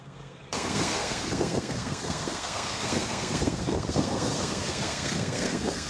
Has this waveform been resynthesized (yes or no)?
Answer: yes